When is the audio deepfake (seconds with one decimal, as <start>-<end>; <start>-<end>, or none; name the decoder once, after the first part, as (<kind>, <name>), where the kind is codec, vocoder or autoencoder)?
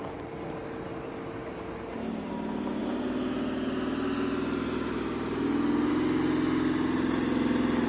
1.4-2.3 (vocoder, BigVGAN v2)